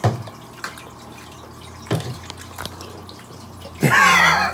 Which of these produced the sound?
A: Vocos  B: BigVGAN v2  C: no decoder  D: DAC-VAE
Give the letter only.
C